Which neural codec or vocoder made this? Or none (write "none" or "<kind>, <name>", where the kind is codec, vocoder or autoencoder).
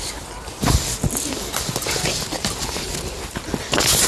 none